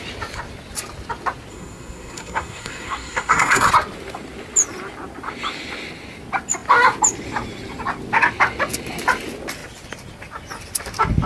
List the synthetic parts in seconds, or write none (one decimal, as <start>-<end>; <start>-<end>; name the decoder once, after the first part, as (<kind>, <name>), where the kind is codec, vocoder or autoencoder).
1.5-3.7 (codec, SNAC)